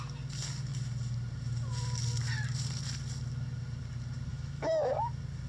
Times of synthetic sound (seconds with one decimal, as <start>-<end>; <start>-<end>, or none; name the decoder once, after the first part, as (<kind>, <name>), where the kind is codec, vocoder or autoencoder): 4.3-4.9 (autoencoder, DAC-VAE)